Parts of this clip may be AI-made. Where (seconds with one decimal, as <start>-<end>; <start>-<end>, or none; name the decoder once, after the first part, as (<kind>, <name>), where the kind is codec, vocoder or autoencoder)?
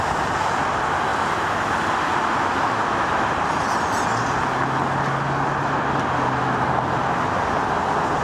none